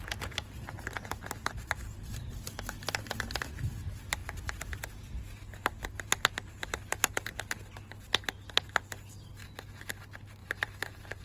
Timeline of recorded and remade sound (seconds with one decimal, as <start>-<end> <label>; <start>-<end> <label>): 0.0-10.4 recorded; 10.4-11.2 remade